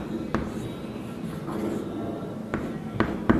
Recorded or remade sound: recorded